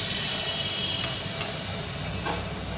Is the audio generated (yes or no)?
no